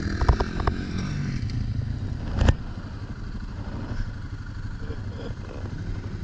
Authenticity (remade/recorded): recorded